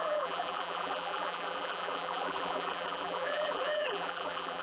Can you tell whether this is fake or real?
fake